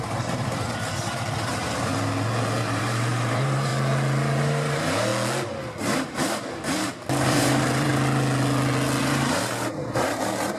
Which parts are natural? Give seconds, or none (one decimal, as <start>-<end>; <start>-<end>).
1.9-2.7; 3.7-4.4; 5.1-5.8; 7.9-9.0